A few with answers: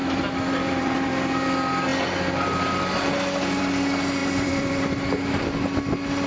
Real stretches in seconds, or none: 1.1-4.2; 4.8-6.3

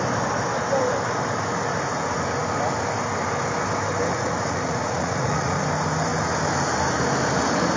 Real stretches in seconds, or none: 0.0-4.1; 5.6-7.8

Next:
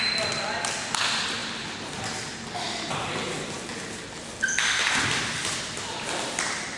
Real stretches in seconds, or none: 0.0-6.8